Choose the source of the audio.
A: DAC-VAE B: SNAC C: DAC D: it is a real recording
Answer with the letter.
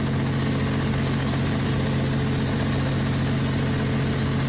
D